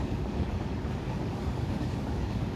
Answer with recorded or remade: remade